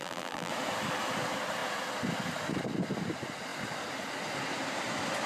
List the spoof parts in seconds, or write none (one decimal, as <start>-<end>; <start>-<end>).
0.0-0.5